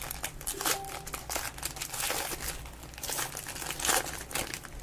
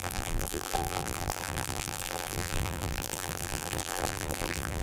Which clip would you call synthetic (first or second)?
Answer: second